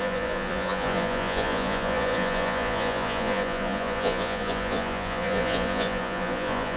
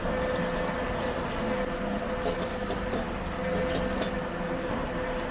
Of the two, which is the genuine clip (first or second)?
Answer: second